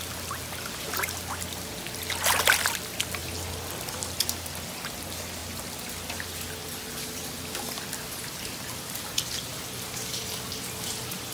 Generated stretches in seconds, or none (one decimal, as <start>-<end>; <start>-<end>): none